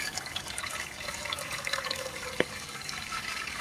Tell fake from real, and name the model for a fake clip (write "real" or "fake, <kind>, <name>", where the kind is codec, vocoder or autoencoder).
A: fake, codec, DAC